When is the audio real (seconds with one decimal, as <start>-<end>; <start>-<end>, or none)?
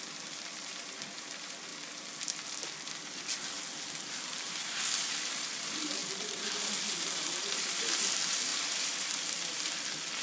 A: 1.7-4.2; 6.0-6.9